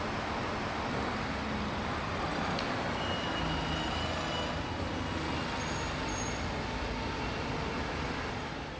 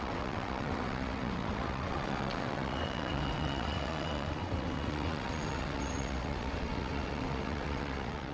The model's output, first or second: second